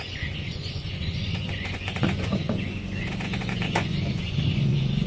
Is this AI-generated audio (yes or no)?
yes